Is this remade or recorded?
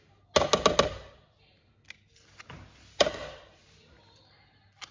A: recorded